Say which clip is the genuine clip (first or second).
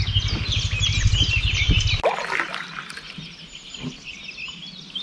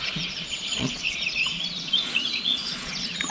first